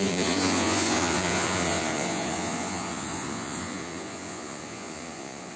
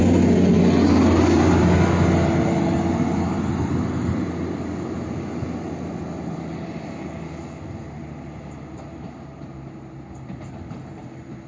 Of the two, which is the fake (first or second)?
first